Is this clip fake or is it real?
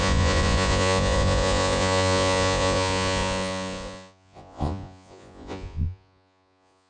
fake